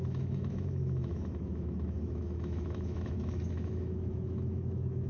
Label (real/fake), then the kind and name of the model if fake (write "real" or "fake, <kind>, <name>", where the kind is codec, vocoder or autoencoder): fake, autoencoder, DAC-VAE